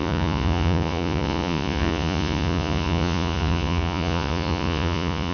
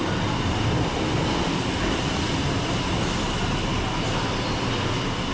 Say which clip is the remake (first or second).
first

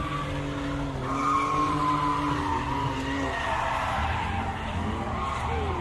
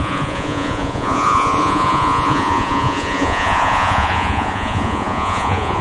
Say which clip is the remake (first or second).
second